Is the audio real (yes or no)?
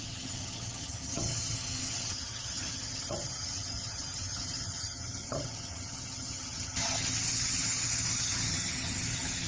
no